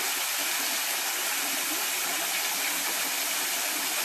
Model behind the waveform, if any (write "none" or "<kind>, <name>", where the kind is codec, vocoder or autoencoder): none